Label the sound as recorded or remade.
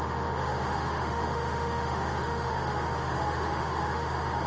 remade